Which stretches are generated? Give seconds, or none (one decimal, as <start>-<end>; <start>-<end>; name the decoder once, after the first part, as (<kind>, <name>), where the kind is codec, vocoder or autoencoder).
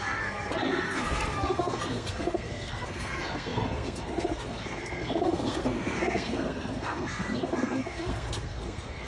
0.0-9.1 (codec, SNAC)